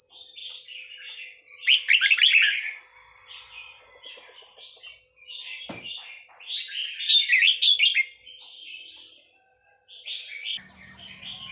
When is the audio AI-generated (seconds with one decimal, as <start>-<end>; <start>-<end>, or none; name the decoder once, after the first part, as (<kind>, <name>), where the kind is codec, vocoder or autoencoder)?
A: none